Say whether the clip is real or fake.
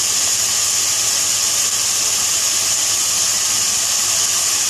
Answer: real